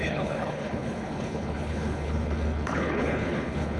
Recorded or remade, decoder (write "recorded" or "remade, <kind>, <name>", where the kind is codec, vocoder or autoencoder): remade, codec, HILCodec